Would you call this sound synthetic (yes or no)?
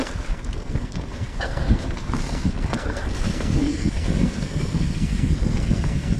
yes